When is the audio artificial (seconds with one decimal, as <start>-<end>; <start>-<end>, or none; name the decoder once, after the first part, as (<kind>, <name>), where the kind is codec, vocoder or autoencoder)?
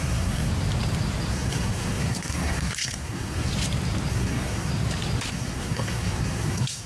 0.0-0.5 (codec, SNAC); 1.3-3.5; 4.1-4.7; 5.3-6.9